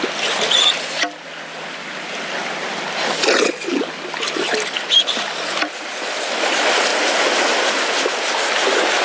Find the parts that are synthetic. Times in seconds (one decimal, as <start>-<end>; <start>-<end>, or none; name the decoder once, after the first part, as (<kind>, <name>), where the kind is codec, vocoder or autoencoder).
none